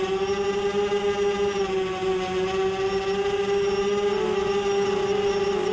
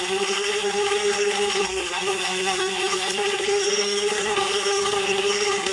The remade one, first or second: second